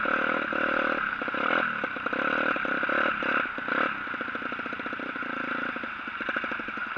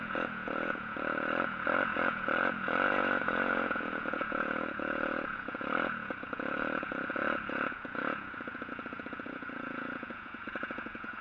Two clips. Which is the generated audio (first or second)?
second